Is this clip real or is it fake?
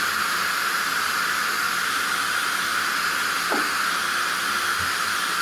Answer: real